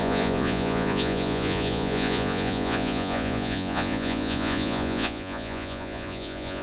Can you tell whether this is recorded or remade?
remade